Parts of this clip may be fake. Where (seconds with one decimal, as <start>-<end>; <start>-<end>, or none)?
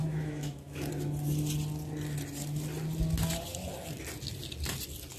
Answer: 0.0-0.9